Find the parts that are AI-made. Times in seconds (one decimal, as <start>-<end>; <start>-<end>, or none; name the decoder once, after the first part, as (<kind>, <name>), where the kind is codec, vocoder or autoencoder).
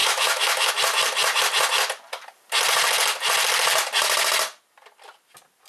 0.0-0.7 (autoencoder, DAC-VAE)